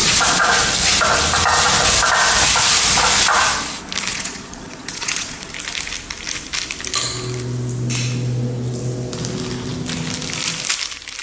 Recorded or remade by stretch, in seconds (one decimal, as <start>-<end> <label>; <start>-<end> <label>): 0.0-0.5 remade; 0.5-4.1 recorded; 4.1-5.5 remade; 5.5-11.2 recorded